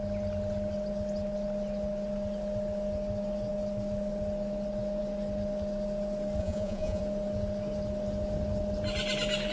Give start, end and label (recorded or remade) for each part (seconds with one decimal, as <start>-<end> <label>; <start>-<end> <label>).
0.0-6.4 recorded; 6.4-7.0 remade; 7.0-9.5 recorded